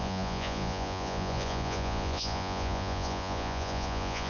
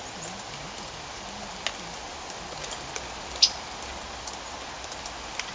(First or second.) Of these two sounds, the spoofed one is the first